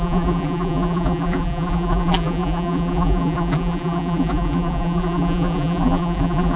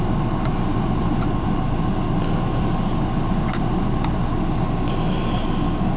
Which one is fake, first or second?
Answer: first